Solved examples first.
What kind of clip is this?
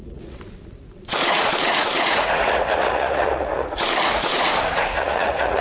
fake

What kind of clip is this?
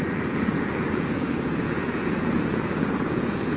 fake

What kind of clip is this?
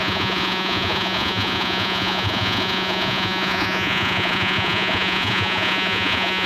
fake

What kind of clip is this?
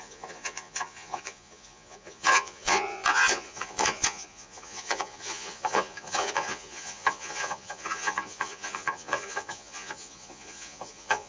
fake